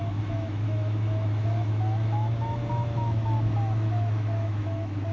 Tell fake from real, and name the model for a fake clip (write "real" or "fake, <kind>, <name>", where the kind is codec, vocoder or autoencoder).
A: fake, autoencoder, DAC-VAE